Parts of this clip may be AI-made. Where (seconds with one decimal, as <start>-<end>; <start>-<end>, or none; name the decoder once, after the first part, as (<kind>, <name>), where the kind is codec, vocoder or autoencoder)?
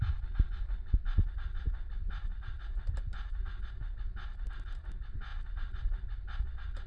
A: none